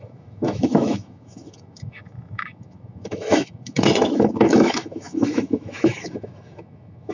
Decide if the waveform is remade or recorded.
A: remade